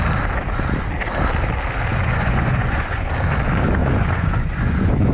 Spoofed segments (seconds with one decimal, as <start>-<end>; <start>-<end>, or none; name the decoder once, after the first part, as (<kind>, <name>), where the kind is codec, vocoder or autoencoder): 1.9-3.1 (vocoder, Vocos); 3.8-5.1